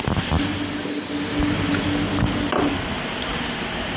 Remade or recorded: recorded